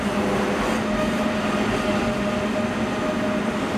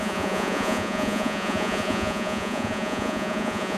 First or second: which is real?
first